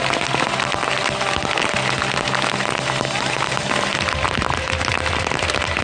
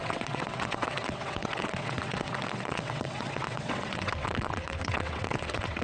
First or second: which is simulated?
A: second